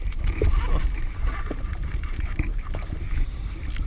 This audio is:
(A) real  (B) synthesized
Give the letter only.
B